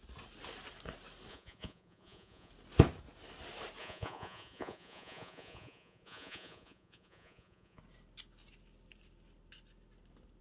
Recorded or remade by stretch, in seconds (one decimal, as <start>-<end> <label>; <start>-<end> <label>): 0.0-1.3 recorded; 1.3-2.5 remade; 2.5-3.8 recorded; 3.8-7.8 remade; 7.8-10.4 recorded